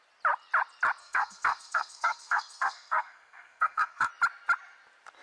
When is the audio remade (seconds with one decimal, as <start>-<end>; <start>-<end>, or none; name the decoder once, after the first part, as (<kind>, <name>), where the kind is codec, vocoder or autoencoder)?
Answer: 1.0-4.1 (codec, SNAC)